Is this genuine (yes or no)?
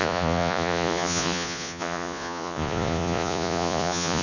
no